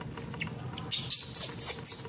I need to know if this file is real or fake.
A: real